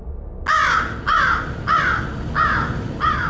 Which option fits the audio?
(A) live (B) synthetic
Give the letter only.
A